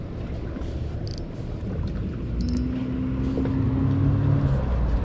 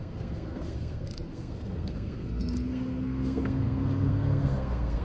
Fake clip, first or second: second